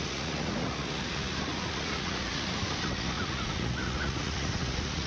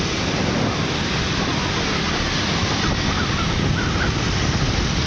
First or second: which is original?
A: second